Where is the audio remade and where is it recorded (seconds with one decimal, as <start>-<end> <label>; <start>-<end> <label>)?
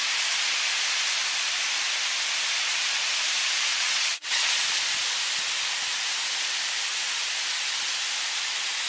0.0-3.7 recorded; 3.7-4.5 remade; 4.5-8.9 recorded